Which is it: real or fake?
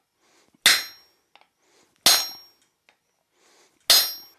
real